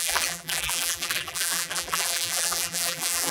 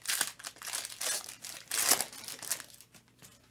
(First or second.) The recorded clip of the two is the second